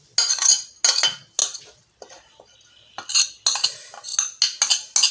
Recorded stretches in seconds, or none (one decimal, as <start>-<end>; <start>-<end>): 0.0-5.1